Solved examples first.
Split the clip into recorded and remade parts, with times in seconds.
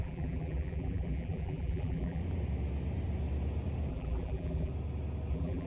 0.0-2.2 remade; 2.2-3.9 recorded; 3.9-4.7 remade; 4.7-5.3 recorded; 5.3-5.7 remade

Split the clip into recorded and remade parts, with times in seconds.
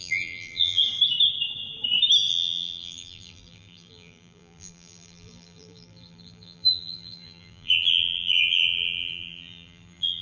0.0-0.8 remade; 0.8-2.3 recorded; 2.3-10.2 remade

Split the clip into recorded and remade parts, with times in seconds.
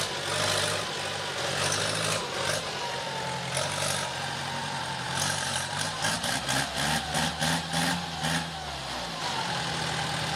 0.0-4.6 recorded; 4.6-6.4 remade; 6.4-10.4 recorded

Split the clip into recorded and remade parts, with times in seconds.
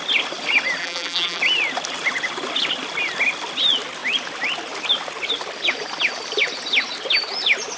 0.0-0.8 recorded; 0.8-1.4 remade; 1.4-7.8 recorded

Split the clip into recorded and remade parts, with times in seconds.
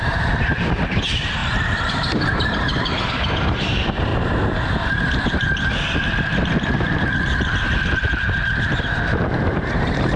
0.0-4.1 remade; 4.1-8.8 recorded; 8.8-10.2 remade